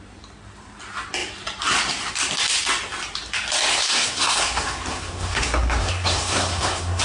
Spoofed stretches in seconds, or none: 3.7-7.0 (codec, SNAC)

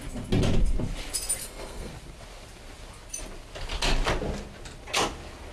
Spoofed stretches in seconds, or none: 1.4-1.9 (codec, SNAC)

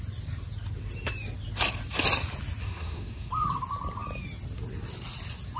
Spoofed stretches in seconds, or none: 2.6-3.3 (codec, SNAC)

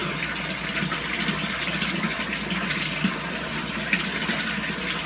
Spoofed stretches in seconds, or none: none

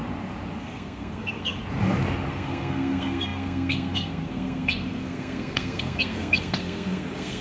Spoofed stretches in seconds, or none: 0.6-1.6 (codec, SNAC); 2.3-7.4

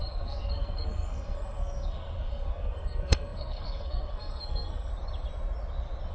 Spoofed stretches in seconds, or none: 0.0-4.9 (codec, SNAC)